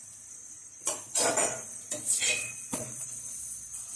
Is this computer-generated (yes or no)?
yes